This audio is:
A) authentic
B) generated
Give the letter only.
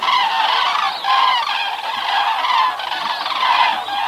A